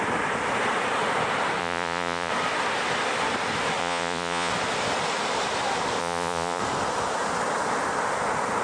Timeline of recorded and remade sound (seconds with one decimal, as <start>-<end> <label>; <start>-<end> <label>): 0.0-1.6 recorded; 1.6-2.3 remade; 2.3-3.8 recorded; 3.8-4.5 remade; 4.5-6.0 recorded; 6.0-6.6 remade; 6.6-8.6 recorded